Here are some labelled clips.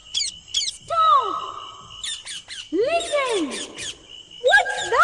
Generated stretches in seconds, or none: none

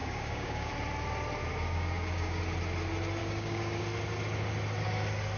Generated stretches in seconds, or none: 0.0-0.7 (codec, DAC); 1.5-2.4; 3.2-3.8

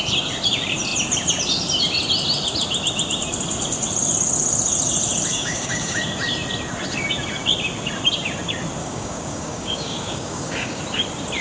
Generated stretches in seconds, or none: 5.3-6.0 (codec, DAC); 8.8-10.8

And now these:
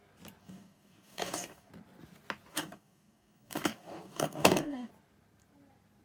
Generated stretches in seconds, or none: 0.4-1.7 (codec, DAC); 2.5-4.9